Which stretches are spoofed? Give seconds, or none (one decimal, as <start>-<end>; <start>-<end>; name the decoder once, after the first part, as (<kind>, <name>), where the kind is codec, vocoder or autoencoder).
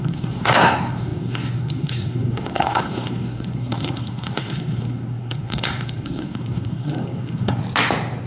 0.0-7.6 (codec, SNAC)